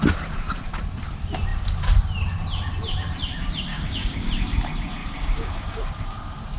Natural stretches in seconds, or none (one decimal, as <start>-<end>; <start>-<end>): 0.0-3.7; 4.3-5.0; 5.8-6.6

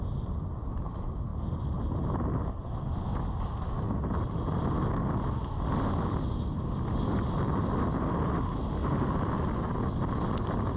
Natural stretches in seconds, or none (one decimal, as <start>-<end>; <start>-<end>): 0.0-10.8

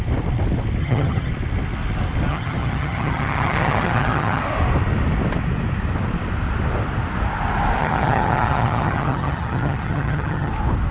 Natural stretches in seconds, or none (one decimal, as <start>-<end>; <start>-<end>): 0.0-0.8; 1.3-2.3; 4.4-7.8; 10.5-10.9

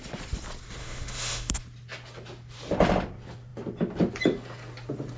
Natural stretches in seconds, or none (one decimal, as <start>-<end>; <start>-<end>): 0.0-0.8; 1.5-5.2